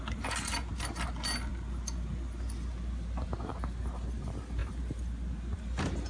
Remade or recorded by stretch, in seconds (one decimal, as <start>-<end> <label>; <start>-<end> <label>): 0.0-6.1 recorded